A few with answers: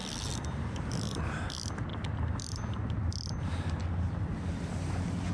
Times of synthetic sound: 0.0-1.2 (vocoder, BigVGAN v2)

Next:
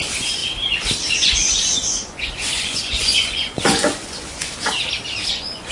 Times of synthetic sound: 0.0-0.4 (vocoder, Vocos); 1.1-4.7; 5.3-5.7

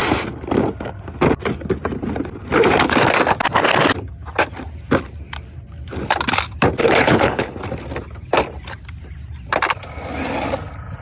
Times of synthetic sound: 6.8-7.6 (codec, HILCodec)

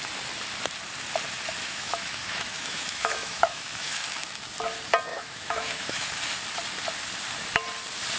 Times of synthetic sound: 1.6-4.4 (autoencoder, DAC-VAE); 5.1-6.2

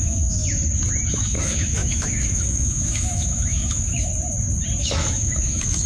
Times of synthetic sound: 0.0-0.4 (autoencoder, DAC-VAE); 1.1-4.1; 4.8-5.9

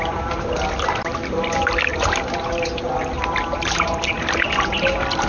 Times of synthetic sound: none

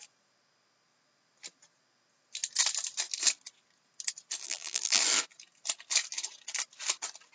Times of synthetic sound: 4.4-5.0 (vocoder, BigVGAN v2)

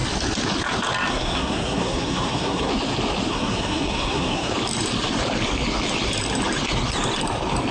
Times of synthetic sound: 1.1-2.7 (codec, SNAC); 3.3-4.5